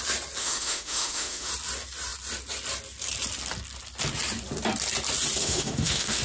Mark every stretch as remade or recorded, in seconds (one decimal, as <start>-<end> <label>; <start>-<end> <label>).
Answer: 0.0-0.4 recorded; 0.4-1.5 remade; 1.5-5.4 recorded; 5.4-6.2 remade